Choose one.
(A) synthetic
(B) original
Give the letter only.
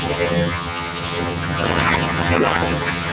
A